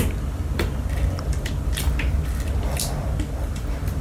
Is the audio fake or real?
real